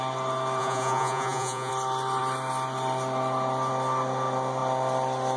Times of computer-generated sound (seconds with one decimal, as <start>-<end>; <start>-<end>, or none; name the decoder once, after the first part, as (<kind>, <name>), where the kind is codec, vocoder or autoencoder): 0.6-1.7 (vocoder, Vocos)